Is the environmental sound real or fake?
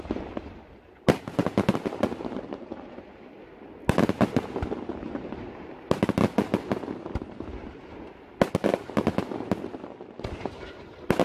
real